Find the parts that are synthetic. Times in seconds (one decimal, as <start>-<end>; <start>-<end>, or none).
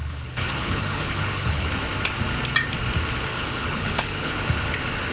0.0-1.7; 3.3-4.3